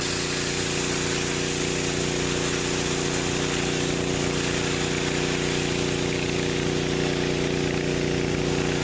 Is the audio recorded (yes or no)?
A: yes